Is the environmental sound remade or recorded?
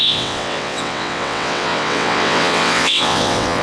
remade